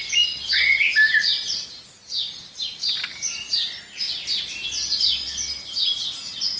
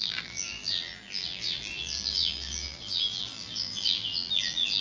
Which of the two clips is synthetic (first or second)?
second